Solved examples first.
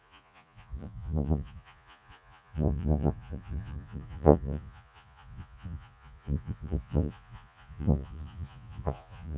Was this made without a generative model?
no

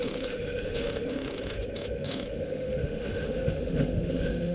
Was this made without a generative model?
no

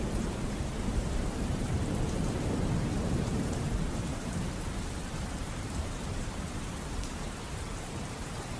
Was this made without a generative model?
no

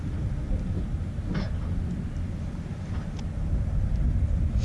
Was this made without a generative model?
yes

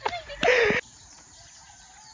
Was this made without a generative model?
yes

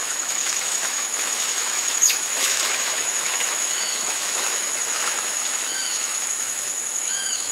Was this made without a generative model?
no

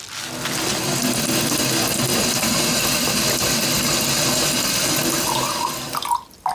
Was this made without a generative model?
yes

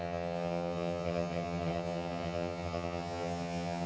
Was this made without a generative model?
no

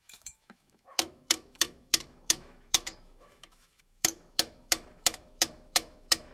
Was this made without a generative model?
no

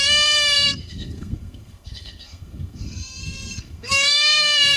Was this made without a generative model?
no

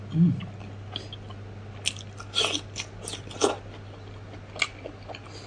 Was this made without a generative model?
yes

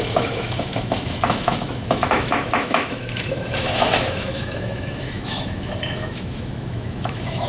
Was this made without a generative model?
no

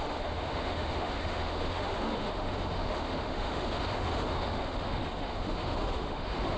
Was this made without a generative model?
no